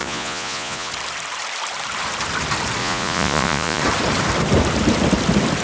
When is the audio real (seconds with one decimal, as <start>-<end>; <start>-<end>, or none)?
0.9-2.8; 3.8-5.6